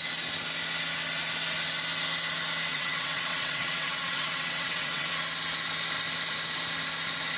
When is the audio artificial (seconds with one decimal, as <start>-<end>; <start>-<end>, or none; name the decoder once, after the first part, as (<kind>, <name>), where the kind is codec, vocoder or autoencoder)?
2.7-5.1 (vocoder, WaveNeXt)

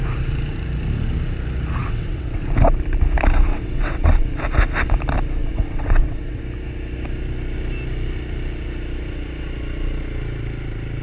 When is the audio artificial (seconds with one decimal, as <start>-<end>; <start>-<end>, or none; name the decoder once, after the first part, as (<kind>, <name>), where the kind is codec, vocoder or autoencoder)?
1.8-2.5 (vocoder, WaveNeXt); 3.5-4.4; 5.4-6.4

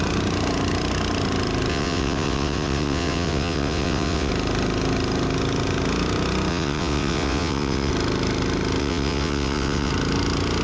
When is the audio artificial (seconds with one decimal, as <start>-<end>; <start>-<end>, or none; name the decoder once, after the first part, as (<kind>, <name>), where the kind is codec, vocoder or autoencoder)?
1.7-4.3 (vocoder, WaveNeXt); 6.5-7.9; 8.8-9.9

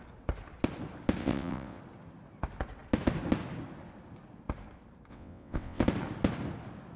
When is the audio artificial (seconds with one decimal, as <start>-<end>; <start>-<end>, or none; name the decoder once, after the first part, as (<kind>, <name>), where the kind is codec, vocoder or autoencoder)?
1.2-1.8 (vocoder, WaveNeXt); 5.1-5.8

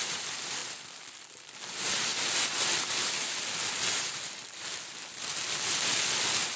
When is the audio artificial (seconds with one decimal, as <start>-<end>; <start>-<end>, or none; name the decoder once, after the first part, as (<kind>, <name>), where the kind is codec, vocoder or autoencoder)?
none

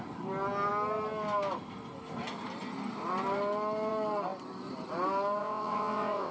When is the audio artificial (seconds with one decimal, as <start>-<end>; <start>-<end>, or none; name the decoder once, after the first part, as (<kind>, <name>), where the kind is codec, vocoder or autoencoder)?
5.4-6.3 (vocoder, WaveNeXt)

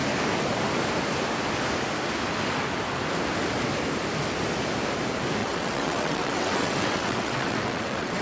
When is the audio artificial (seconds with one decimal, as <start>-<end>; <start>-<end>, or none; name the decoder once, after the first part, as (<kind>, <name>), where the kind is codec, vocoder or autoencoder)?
5.4-8.2 (vocoder, WaveNeXt)